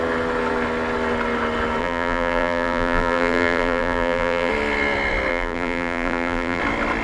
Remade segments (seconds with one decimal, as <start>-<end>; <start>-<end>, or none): 1.8-4.5; 5.3-6.6